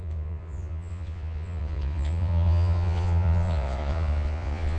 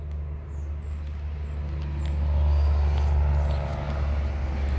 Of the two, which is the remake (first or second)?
first